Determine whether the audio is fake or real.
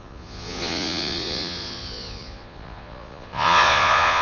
fake